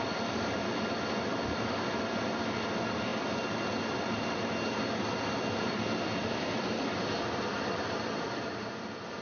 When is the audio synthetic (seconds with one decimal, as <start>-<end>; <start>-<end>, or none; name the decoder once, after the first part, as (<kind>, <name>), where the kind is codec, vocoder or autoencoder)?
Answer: none